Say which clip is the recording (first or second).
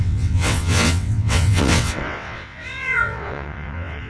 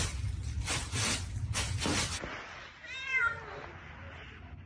second